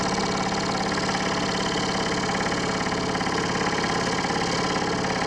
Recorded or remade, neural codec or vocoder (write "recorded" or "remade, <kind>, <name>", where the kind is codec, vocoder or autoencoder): recorded